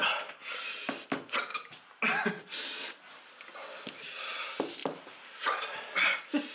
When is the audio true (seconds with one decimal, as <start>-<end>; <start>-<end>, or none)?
0.0-0.4; 0.9-4.8; 5.8-6.5